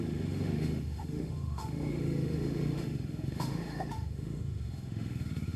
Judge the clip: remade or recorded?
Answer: remade